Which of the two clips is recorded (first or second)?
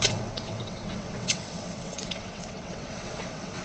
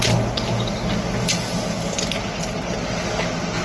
second